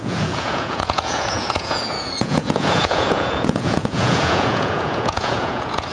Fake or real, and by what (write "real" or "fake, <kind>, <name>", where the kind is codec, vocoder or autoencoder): fake, vocoder, Vocos